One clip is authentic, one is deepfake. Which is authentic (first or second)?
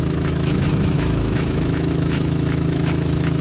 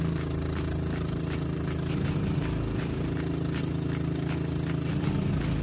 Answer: second